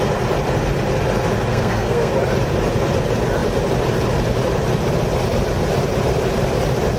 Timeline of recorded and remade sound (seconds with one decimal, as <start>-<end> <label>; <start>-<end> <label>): 0.0-1.5 recorded; 1.5-2.1 remade; 2.1-7.0 recorded